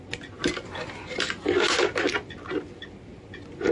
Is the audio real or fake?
real